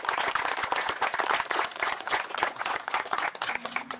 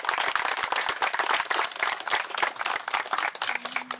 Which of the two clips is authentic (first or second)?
second